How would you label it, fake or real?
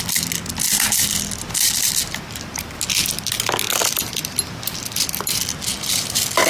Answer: real